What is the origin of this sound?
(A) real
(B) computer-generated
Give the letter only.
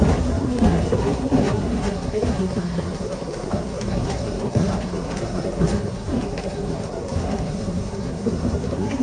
B